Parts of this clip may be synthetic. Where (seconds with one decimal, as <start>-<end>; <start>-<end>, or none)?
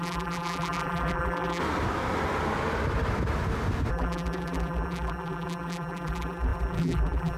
0.0-1.6; 3.9-7.4